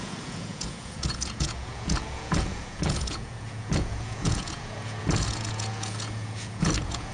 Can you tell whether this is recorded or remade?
remade